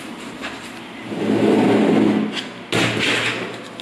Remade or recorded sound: recorded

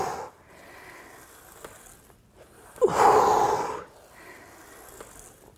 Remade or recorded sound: recorded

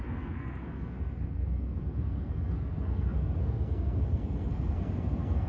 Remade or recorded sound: remade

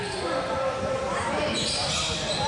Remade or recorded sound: recorded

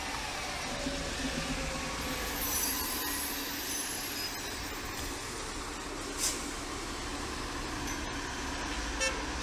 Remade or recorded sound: recorded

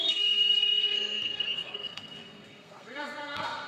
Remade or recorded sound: remade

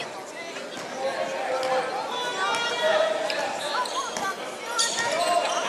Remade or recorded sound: recorded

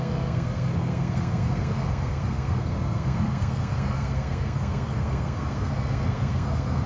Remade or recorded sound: remade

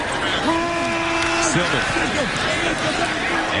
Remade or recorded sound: recorded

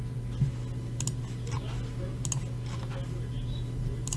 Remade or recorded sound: recorded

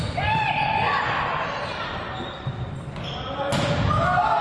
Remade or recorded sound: recorded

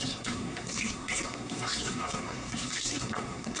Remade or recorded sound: remade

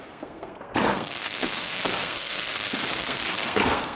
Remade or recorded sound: remade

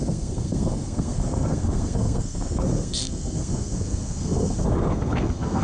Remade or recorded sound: remade